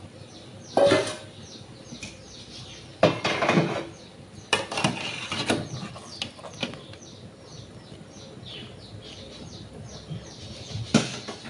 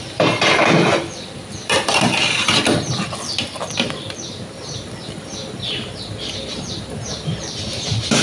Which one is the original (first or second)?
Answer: first